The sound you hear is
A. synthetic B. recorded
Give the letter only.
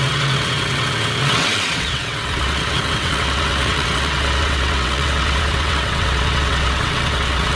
A